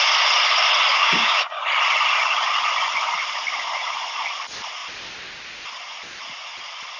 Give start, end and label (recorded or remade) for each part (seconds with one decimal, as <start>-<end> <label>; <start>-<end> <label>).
0.0-0.9 recorded; 0.9-1.6 remade; 1.6-7.0 recorded